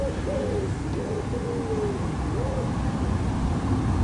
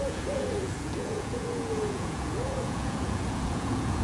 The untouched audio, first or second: first